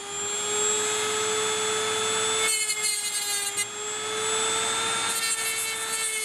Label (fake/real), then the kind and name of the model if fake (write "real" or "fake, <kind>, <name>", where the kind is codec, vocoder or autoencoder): real